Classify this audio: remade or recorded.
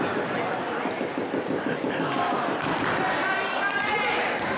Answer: recorded